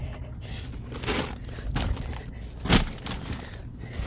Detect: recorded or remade recorded